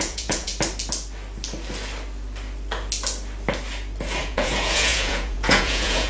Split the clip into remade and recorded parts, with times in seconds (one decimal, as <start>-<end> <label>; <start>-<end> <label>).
0.0-0.5 remade; 0.5-4.2 recorded; 4.2-6.1 remade